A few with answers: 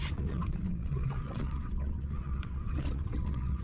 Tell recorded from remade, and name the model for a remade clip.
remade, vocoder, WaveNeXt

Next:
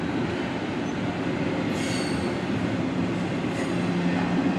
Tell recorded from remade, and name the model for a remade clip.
recorded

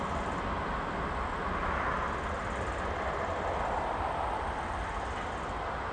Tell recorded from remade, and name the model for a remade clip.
recorded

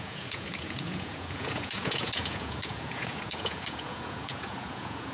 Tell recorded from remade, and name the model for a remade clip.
remade, vocoder, Vocos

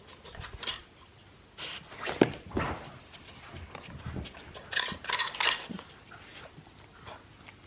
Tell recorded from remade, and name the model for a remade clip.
recorded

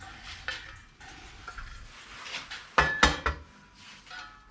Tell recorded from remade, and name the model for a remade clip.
recorded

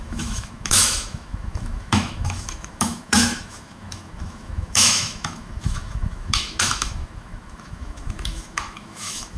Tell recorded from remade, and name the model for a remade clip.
remade, autoencoder, DAC-VAE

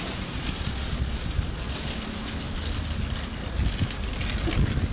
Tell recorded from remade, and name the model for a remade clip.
recorded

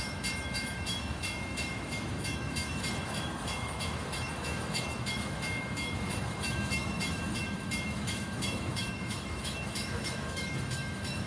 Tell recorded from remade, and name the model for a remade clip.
remade, autoencoder, DAC-VAE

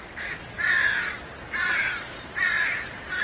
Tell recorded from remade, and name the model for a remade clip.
recorded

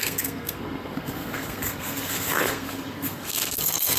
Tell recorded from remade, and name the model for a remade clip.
remade, codec, SNAC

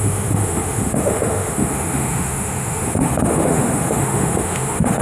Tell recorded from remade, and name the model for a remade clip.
remade, autoencoder, DAC-VAE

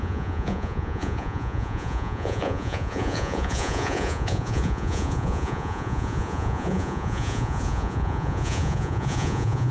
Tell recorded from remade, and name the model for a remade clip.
remade, vocoder, Vocos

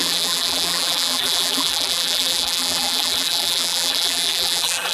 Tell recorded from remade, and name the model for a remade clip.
remade, vocoder, BigVGAN v2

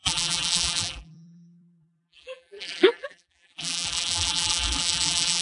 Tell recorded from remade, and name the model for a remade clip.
remade, vocoder, BigVGAN v2